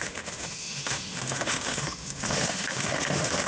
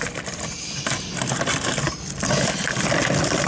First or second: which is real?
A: second